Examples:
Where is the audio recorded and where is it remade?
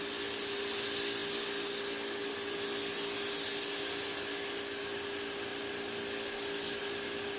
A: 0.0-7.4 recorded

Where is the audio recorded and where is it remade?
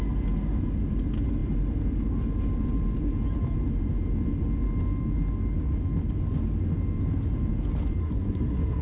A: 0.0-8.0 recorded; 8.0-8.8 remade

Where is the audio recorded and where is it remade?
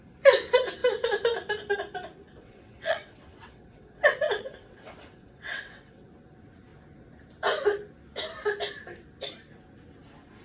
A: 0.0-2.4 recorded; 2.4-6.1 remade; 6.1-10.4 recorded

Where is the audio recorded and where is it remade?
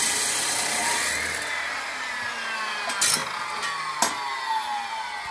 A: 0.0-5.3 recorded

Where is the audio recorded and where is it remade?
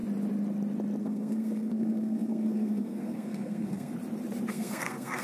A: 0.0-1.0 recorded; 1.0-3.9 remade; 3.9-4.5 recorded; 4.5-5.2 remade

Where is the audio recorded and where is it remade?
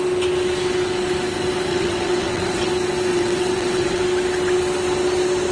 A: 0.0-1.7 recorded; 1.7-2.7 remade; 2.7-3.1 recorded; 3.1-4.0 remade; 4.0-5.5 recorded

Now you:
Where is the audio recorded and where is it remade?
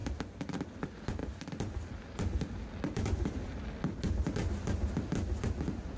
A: 0.0-0.6 remade; 0.6-1.2 recorded; 1.2-4.5 remade; 4.5-6.0 recorded